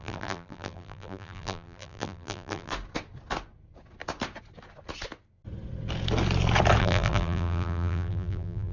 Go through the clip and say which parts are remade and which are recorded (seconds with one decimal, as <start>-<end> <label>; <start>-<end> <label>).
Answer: 0.0-2.7 remade; 2.7-6.8 recorded; 6.8-8.7 remade

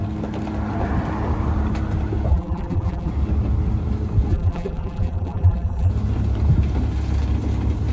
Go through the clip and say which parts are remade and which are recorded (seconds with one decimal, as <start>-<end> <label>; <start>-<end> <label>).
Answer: 0.0-2.3 recorded; 2.3-3.1 remade; 3.1-4.3 recorded; 4.3-5.9 remade; 5.9-7.9 recorded

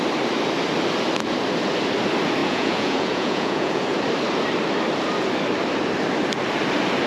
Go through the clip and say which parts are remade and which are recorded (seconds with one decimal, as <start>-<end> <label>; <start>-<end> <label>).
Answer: 0.0-2.4 recorded; 2.4-3.8 remade; 3.8-7.1 recorded

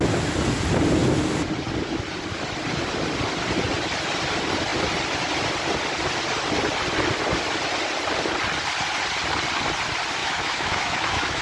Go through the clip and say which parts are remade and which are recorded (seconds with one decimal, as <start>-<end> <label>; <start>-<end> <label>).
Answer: 0.0-10.2 recorded; 10.2-11.4 remade

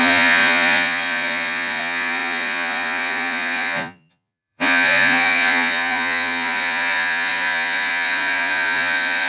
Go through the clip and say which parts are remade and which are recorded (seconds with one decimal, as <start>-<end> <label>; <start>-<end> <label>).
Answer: 0.0-9.3 remade

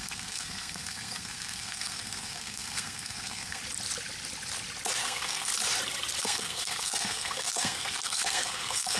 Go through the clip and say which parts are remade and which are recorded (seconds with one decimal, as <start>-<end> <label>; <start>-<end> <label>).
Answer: 0.0-3.6 remade; 3.6-5.0 recorded; 5.0-5.5 remade; 5.5-6.2 recorded; 6.2-9.0 remade

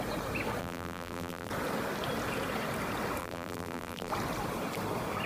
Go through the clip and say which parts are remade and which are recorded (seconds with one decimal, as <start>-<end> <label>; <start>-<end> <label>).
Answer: 0.0-0.6 recorded; 0.6-1.5 remade; 1.5-3.2 recorded; 3.2-4.1 remade; 4.1-5.3 recorded

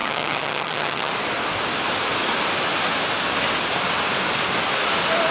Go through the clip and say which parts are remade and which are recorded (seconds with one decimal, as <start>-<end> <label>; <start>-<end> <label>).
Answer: 0.0-1.1 remade; 1.1-5.3 recorded